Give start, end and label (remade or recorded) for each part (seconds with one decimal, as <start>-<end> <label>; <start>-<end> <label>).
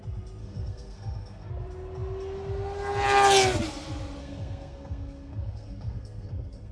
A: 0.0-0.4 recorded; 0.4-1.5 remade; 1.5-4.2 recorded; 4.2-6.7 remade